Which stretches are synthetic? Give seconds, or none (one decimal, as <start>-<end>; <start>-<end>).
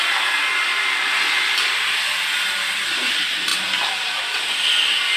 none